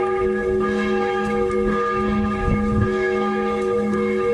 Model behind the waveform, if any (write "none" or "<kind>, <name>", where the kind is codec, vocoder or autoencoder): autoencoder, DAC-VAE